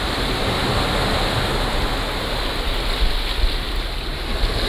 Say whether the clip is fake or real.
real